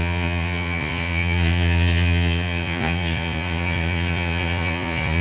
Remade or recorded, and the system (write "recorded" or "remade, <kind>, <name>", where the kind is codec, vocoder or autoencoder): remade, vocoder, Vocos